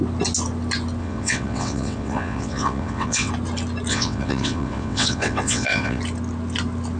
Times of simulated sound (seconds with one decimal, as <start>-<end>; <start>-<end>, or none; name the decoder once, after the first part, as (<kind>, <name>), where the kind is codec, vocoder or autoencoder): 1.0-3.3 (vocoder, WaveNeXt); 3.9-6.0